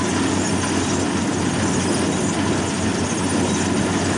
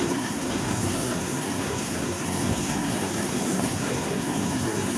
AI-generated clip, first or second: second